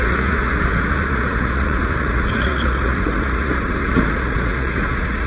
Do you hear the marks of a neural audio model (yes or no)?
yes